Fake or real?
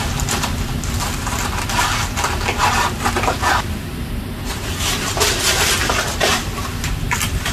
fake